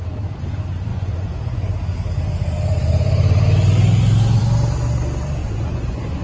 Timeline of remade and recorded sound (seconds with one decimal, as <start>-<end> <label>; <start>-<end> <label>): 0.0-0.9 recorded; 0.9-1.7 remade; 1.7-5.4 recorded; 5.4-6.2 remade